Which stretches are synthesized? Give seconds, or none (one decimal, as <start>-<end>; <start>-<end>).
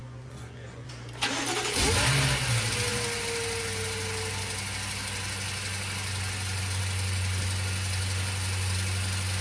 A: 0.0-0.9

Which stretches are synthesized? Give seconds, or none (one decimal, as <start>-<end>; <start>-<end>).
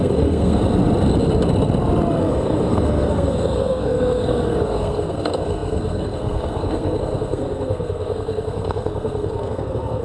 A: 0.0-0.6; 2.2-10.0